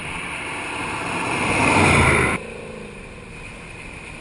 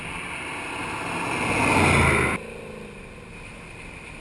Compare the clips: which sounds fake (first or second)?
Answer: first